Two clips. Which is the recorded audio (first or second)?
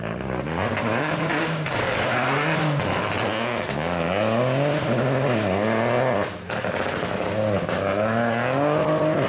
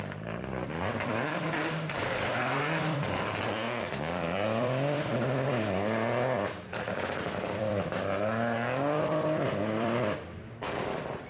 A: first